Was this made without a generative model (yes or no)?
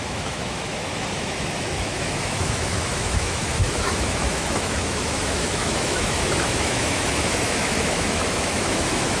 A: no